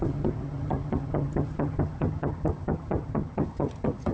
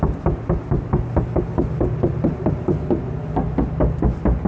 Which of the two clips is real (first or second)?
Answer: second